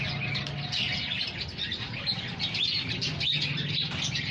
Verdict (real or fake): real